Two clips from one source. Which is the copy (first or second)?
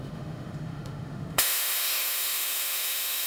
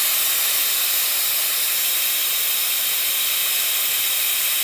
first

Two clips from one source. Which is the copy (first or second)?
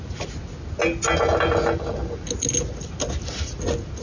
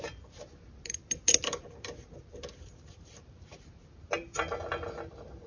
second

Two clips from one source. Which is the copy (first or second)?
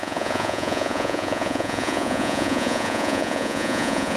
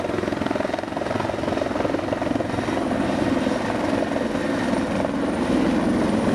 first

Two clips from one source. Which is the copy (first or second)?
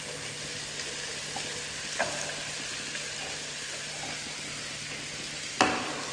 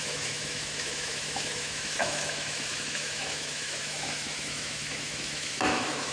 second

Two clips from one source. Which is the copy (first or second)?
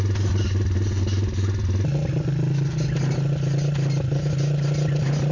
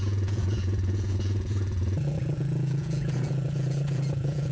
second